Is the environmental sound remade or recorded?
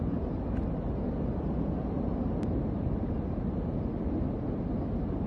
recorded